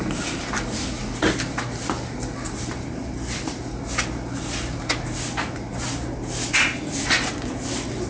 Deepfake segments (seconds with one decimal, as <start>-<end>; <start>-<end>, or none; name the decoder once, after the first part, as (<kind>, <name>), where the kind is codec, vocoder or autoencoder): none